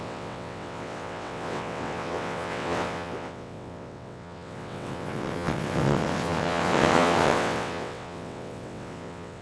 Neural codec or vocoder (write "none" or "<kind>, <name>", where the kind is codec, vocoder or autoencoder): vocoder, WaveNeXt